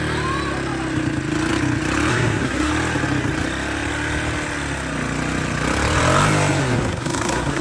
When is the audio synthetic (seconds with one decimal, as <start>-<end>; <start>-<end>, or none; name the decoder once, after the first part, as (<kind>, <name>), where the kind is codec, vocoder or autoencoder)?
2.1-2.7 (codec, SNAC); 6.6-7.6